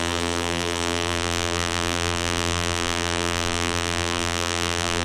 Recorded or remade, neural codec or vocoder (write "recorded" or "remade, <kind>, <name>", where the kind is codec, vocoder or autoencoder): remade, vocoder, BigVGAN v2